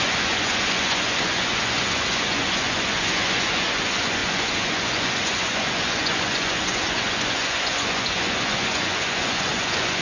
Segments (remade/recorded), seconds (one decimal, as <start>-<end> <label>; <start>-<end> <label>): 0.0-10.0 remade